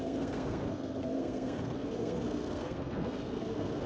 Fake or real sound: fake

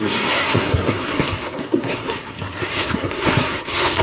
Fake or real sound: fake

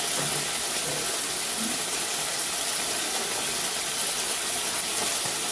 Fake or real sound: real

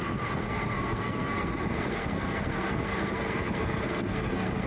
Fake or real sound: fake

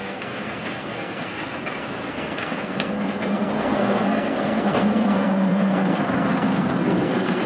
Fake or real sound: fake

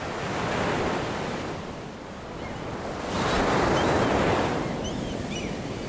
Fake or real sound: real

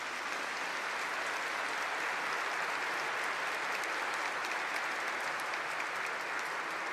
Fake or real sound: real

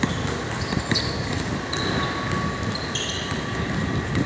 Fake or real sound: real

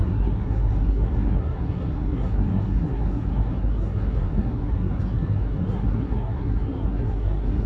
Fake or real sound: fake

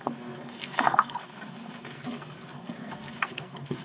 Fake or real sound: fake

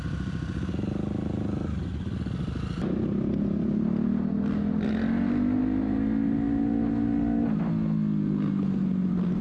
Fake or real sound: real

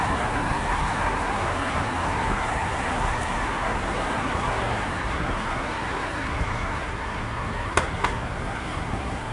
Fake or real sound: fake